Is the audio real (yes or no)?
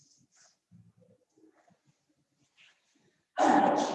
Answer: yes